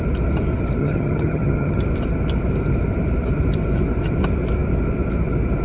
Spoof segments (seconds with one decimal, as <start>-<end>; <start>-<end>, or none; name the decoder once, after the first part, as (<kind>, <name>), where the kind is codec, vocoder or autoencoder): 0.8-1.8 (vocoder, HiFi-GAN)